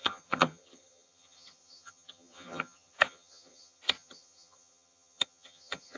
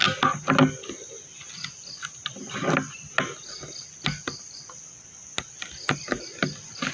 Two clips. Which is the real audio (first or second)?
second